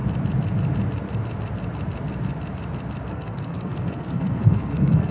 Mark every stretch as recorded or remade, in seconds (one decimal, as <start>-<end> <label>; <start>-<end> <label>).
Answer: 0.0-3.1 recorded; 3.1-5.1 remade